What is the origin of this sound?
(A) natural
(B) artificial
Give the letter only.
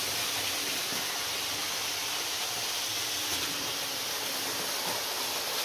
A